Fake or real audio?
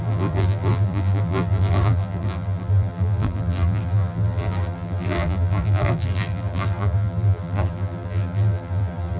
fake